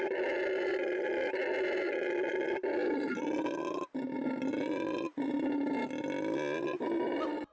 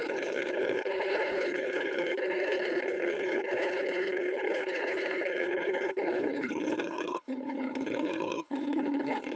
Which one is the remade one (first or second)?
second